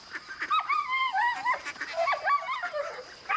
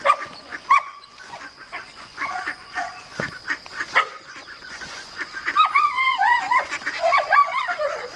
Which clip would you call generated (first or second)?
second